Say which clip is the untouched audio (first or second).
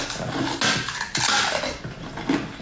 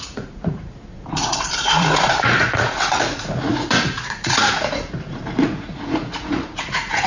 first